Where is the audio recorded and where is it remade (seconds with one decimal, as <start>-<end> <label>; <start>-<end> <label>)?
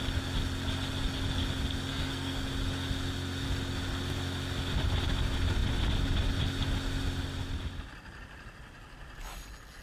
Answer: 0.0-1.9 recorded; 1.9-2.4 remade; 2.4-9.8 recorded